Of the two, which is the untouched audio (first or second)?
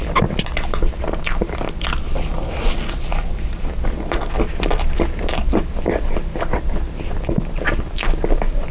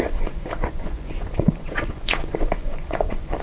first